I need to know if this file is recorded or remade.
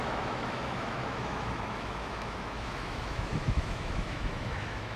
remade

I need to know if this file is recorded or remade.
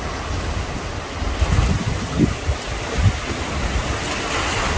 recorded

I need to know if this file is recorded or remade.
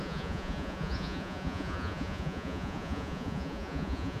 remade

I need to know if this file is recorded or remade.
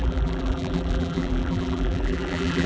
remade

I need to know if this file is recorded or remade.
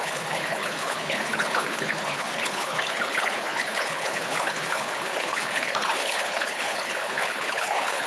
remade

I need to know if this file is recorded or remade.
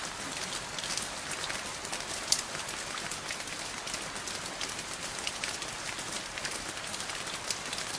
recorded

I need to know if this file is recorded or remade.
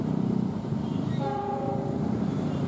remade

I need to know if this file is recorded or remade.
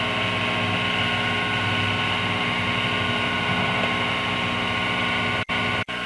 recorded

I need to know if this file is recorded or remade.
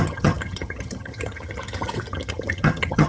remade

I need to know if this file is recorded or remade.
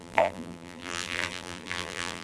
remade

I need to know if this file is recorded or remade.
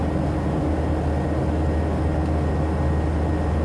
recorded